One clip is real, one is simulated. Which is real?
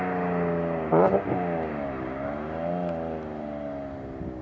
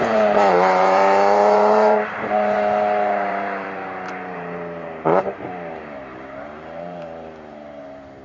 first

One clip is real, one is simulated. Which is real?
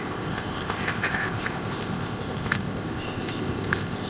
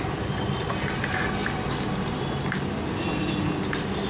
second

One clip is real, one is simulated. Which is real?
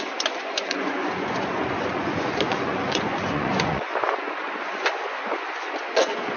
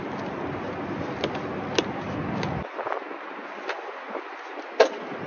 second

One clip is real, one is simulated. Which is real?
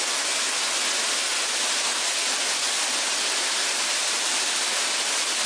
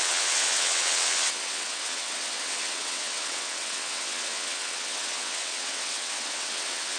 first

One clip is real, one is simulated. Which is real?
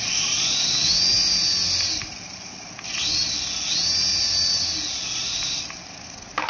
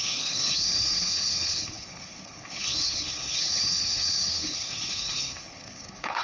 first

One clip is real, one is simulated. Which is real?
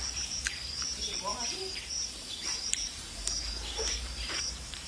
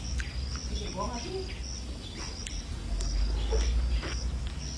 second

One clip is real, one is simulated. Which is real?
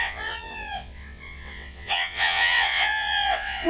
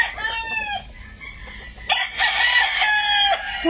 second